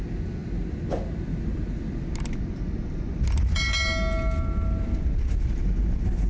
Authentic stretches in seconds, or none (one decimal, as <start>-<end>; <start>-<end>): 0.0-6.3